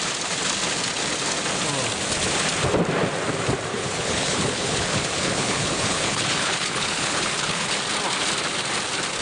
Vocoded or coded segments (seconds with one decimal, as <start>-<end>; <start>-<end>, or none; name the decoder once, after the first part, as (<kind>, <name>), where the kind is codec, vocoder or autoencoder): 3.7-7.8 (codec, HILCodec)